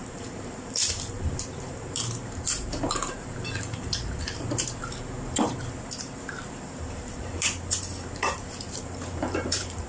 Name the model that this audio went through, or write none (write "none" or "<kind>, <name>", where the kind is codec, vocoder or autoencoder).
vocoder, BigVGAN v2